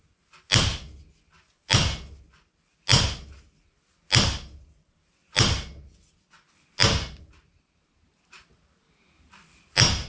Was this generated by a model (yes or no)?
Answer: no